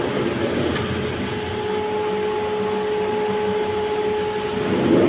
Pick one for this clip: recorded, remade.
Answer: recorded